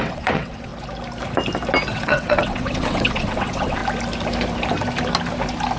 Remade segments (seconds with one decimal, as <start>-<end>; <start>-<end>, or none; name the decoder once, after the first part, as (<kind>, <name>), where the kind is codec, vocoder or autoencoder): 0.0-0.7 (vocoder, WaveNeXt); 1.9-3.8